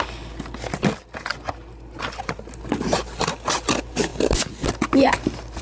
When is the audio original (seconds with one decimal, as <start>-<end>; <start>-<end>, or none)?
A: 0.0-5.6